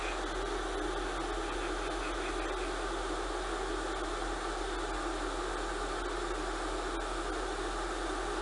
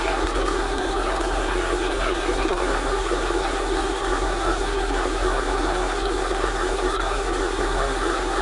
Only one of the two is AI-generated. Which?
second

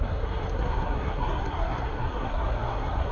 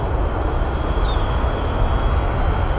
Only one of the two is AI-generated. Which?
first